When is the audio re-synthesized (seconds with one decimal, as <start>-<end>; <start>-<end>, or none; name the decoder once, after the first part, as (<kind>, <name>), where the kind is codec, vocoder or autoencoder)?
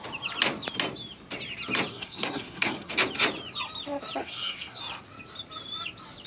1.9-2.9 (codec, SNAC); 4.2-4.8